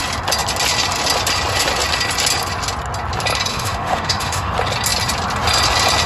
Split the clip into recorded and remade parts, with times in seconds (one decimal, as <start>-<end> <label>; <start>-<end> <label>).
0.0-3.5 recorded; 3.5-4.5 remade; 4.5-6.1 recorded

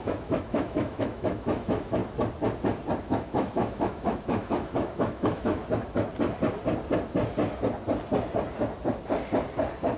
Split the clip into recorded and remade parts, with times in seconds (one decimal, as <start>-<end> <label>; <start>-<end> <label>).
0.0-2.0 remade; 2.0-3.0 recorded; 3.0-5.6 remade; 5.6-10.0 recorded

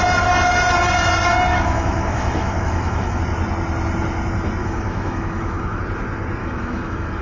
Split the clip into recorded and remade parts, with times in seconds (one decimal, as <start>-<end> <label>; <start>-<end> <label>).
0.0-1.5 recorded; 1.5-3.2 remade; 3.2-4.6 recorded; 4.6-5.8 remade; 5.8-6.4 recorded; 6.4-7.2 remade

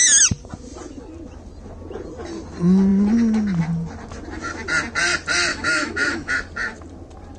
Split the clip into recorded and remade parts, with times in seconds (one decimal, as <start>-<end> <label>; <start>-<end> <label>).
0.0-5.5 recorded; 5.5-6.3 remade; 6.3-7.4 recorded

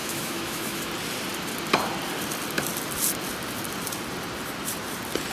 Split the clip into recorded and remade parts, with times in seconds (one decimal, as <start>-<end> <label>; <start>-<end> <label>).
0.0-0.9 remade; 0.9-5.3 recorded